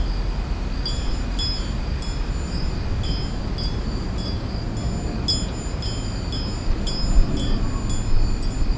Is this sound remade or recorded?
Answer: recorded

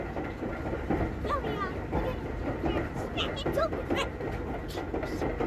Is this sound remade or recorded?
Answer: recorded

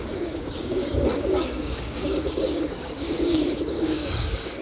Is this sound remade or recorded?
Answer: remade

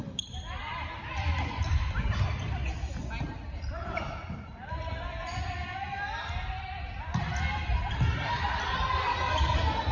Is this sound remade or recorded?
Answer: recorded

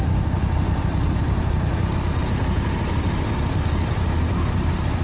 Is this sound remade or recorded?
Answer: recorded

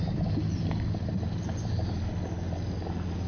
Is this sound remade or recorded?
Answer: recorded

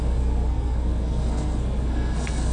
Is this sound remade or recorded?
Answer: remade